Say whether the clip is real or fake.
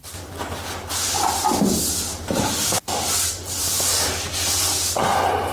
real